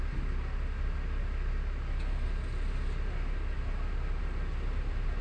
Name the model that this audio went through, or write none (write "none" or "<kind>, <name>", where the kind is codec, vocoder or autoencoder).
none